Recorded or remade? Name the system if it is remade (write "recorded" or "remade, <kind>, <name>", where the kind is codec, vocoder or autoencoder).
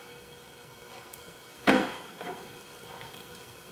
remade, codec, SNAC